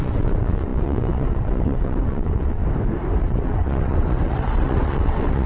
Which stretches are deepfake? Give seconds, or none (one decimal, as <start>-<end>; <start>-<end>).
0.0-2.6; 3.2-5.5